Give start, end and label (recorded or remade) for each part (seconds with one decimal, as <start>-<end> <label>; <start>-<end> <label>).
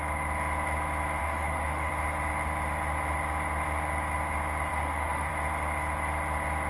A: 0.0-1.2 recorded; 1.2-1.9 remade; 1.9-4.7 recorded; 4.7-5.3 remade; 5.3-6.7 recorded